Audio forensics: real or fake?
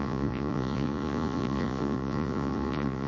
fake